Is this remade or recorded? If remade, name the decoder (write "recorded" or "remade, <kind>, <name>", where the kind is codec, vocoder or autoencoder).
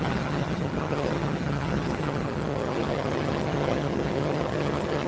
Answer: remade, vocoder, HiFi-GAN